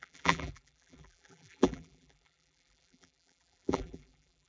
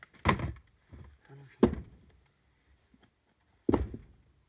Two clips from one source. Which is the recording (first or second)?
second